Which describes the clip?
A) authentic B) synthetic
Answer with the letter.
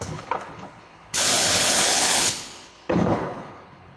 B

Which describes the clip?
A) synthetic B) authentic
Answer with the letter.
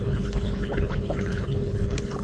A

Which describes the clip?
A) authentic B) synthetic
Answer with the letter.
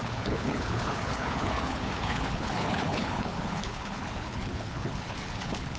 B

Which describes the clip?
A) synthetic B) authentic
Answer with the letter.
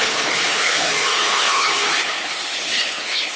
A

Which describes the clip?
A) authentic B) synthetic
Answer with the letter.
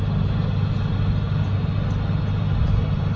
A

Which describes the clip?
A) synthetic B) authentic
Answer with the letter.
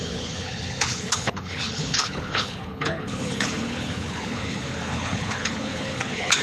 A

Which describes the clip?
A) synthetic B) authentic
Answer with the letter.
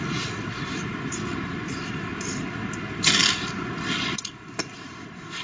B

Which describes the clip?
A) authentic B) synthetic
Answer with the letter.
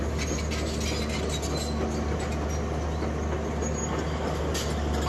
A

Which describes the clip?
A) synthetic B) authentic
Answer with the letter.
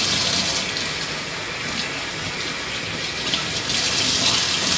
B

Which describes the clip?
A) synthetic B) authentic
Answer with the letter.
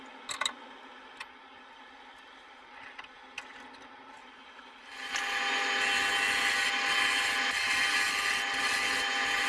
B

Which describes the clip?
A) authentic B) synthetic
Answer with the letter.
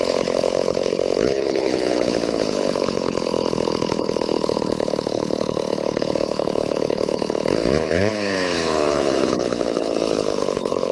B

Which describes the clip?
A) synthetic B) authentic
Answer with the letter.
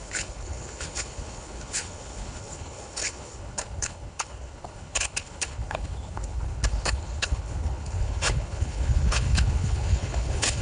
A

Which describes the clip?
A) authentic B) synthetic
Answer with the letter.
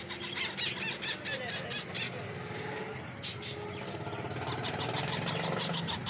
A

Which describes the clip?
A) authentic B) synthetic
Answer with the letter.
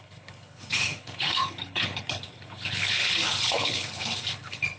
B